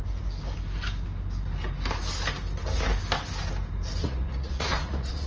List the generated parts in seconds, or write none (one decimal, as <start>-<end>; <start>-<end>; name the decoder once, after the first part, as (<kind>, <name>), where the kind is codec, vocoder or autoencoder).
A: 4.0-5.3 (vocoder, Vocos)